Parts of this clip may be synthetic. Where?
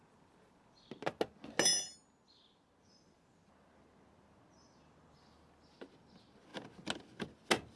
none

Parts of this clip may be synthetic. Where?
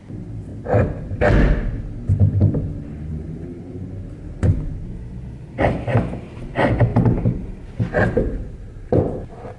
3.1-3.6 (vocoder, BigVGAN v2); 6.9-9.0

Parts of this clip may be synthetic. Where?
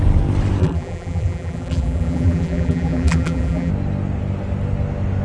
0.6-3.7 (vocoder, BigVGAN v2)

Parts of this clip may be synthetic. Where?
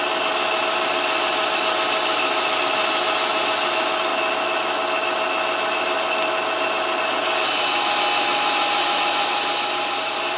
8.3-10.4 (vocoder, BigVGAN v2)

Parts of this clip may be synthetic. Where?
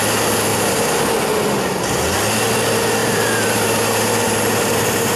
0.5-1.1 (vocoder, BigVGAN v2); 3.0-5.2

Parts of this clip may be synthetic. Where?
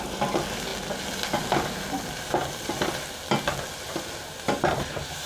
none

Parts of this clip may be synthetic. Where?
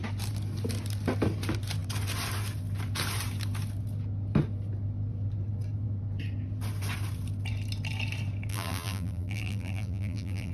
8.5-10.5 (vocoder, BigVGAN v2)